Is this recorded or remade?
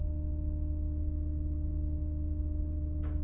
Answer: recorded